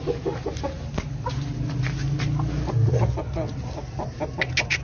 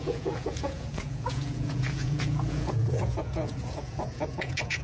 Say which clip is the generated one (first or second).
second